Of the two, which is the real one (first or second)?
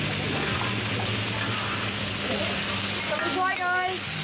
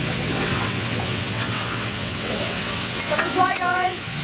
first